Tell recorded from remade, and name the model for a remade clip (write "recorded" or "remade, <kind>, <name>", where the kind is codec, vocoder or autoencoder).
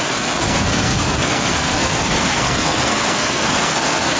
remade, codec, SNAC